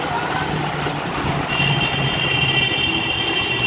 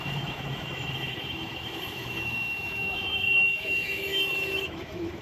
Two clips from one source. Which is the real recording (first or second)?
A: first